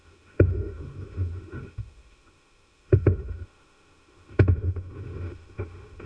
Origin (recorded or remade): remade